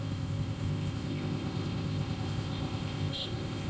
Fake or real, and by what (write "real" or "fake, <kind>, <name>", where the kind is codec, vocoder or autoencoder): fake, codec, ZipCodec